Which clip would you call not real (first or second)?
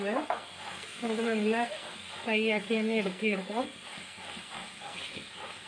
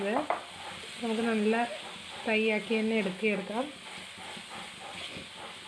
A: first